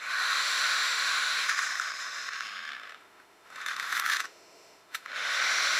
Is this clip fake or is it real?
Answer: fake